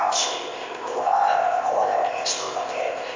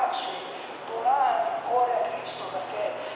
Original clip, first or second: second